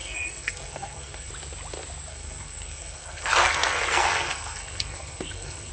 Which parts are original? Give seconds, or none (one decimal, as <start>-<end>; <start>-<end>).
1.3-2.1